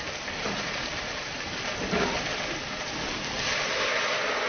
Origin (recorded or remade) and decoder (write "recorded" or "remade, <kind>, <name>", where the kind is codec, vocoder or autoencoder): recorded